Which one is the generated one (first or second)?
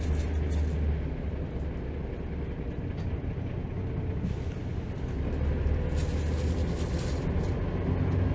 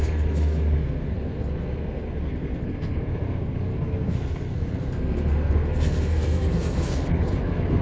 second